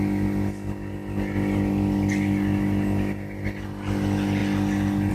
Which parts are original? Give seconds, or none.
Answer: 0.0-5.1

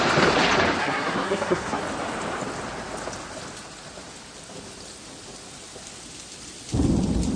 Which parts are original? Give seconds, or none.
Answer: 0.0-0.8; 1.8-7.4

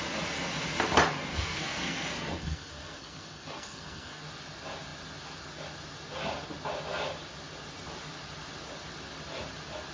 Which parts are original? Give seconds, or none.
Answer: 0.0-1.3; 4.2-9.9